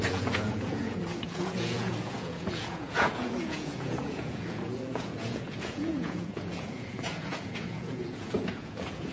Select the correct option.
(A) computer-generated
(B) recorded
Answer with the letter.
A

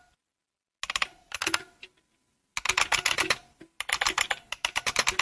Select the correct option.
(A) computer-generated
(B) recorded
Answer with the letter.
B